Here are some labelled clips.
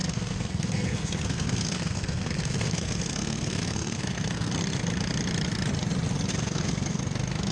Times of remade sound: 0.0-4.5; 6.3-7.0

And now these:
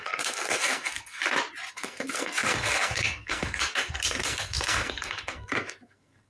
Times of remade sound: 0.0-1.2; 1.7-6.3